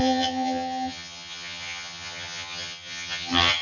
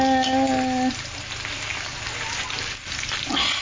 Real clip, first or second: second